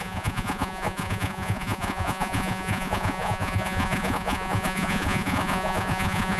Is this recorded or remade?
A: remade